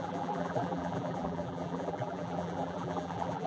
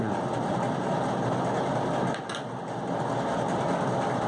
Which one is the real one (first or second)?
second